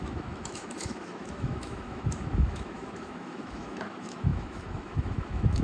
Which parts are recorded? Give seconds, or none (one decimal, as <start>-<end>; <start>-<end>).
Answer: none